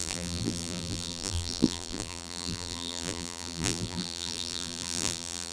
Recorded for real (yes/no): no